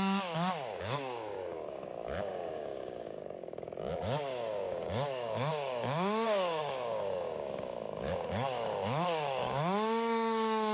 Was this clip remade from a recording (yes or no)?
yes